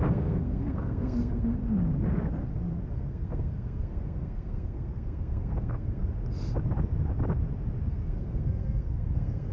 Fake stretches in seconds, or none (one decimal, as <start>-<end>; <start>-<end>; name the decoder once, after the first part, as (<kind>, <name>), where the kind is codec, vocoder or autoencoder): 0.0-1.6 (codec, SNAC); 2.9-6.0; 7.9-9.5